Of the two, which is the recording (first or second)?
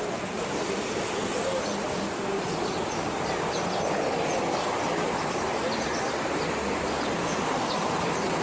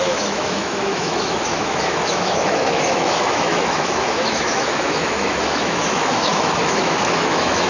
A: first